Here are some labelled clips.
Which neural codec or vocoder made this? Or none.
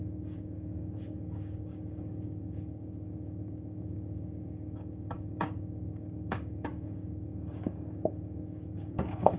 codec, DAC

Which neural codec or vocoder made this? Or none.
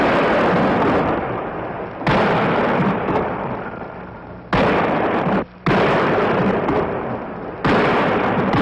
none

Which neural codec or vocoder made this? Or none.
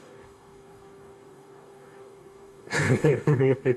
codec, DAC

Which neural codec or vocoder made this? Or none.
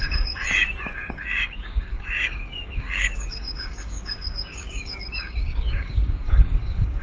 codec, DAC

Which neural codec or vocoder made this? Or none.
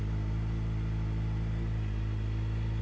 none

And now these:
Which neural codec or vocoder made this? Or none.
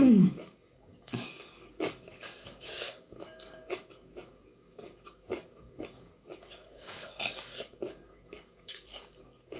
codec, DAC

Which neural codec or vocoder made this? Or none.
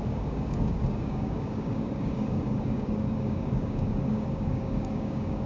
codec, DAC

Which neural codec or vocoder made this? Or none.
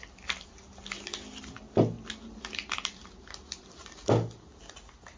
none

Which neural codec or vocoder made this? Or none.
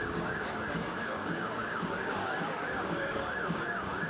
codec, DAC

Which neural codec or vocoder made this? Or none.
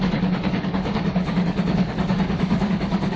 codec, DAC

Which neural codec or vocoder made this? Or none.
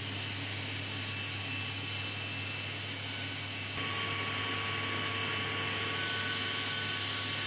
none